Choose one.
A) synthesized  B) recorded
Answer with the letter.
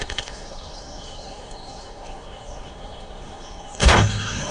A